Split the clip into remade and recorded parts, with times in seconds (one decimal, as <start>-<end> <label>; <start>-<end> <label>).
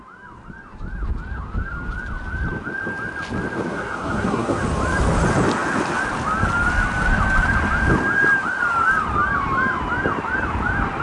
0.0-3.7 recorded; 3.7-4.6 remade; 4.6-11.0 recorded